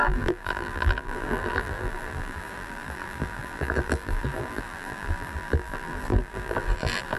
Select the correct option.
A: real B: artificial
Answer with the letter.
B